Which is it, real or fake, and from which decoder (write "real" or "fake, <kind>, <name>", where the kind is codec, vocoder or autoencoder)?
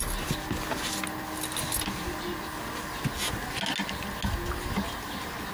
real